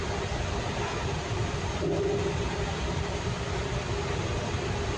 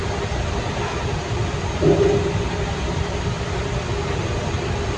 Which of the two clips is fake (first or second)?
first